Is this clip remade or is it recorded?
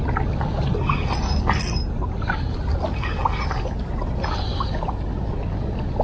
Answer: recorded